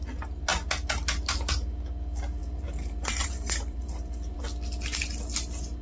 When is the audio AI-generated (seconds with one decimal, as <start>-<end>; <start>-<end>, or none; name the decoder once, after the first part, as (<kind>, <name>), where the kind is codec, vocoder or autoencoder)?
2.4-4.4 (vocoder, BigVGAN v2)